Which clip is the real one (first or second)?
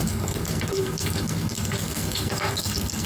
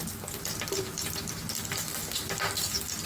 second